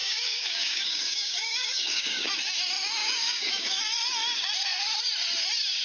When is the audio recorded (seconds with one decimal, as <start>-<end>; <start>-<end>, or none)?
2.3-3.0; 3.8-5.8

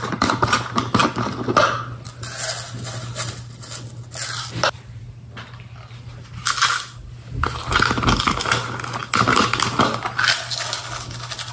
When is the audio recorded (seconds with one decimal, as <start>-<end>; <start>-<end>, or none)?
0.0-11.5

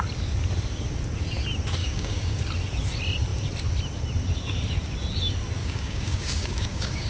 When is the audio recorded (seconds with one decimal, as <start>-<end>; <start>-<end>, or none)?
0.0-1.8; 2.4-5.6